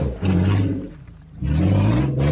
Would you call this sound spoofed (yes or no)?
yes